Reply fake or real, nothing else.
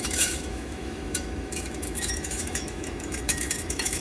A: fake